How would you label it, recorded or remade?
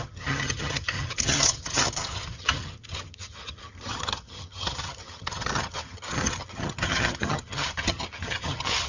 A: remade